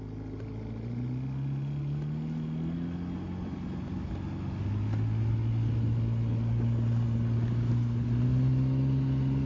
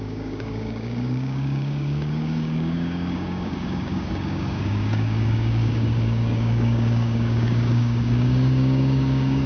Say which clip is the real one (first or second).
first